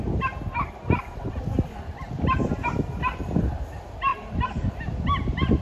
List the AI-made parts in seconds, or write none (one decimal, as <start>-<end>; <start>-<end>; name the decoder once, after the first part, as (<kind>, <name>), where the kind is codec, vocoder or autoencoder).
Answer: none